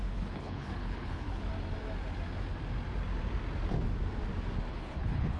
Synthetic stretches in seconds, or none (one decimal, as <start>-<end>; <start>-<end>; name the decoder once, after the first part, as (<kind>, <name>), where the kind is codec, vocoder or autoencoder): 0.0-1.5 (codec, HILCodec); 4.7-5.4